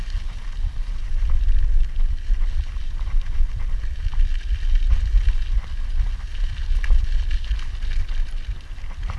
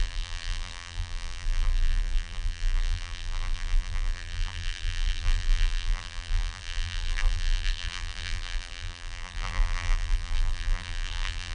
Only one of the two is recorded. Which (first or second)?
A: first